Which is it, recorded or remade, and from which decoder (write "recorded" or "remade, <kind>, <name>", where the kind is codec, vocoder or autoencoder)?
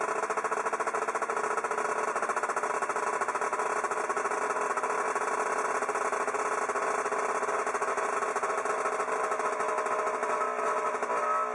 recorded